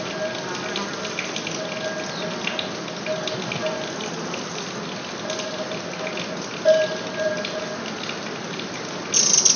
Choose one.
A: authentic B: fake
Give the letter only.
A